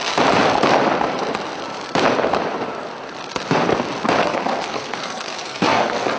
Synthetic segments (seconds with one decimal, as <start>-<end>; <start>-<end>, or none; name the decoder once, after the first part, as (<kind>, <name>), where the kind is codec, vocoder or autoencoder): 4.2-6.2 (codec, SNAC)